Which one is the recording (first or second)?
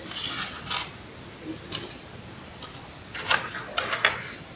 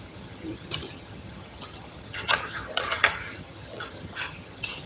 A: first